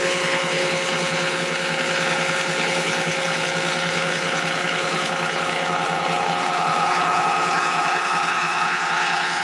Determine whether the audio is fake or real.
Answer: fake